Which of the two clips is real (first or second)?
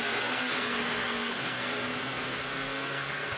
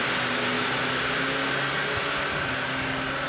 second